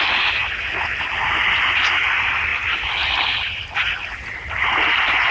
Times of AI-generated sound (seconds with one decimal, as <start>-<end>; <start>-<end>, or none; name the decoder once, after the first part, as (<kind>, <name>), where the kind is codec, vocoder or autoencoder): none